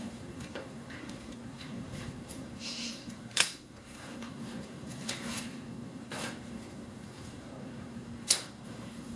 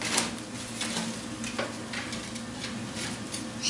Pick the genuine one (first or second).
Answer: second